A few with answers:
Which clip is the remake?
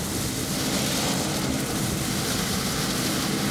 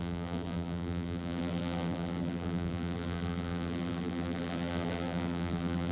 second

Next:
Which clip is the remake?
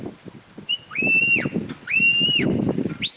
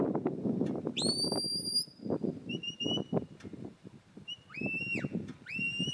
second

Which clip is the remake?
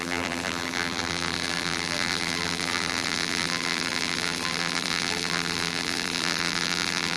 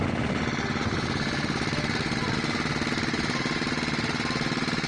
first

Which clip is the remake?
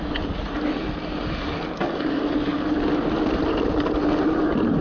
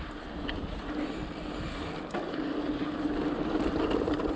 second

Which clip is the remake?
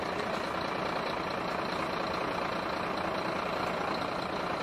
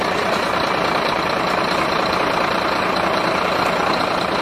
second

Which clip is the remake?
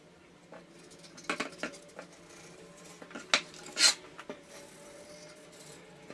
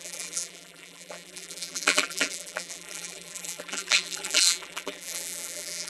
second